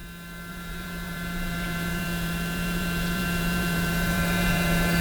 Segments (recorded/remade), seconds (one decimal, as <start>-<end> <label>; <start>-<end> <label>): 0.0-0.5 recorded; 0.5-5.0 remade